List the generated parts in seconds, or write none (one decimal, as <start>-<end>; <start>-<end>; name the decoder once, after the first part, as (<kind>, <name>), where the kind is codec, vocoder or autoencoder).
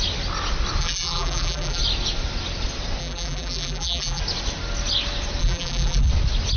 0.8-1.8 (vocoder, BigVGAN v2); 3.0-4.2; 5.4-6.1